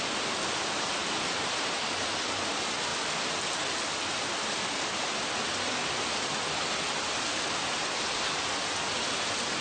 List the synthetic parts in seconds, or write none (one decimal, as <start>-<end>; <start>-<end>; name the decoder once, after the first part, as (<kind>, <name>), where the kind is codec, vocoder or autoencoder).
none